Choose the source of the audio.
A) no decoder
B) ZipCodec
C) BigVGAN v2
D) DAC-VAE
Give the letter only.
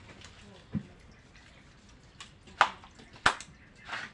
A